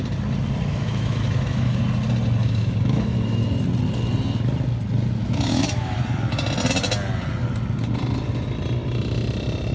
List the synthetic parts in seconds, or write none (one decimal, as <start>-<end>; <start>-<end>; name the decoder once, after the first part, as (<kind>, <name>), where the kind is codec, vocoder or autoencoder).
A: 0.7-1.8 (autoencoder, DAC-VAE); 2.4-3.4; 5.2-6.0